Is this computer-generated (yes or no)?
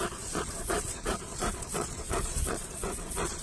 yes